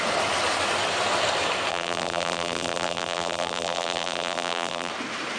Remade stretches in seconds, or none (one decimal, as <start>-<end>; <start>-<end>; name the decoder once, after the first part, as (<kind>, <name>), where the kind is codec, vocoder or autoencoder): 1.7-4.9 (vocoder, BigVGAN v2)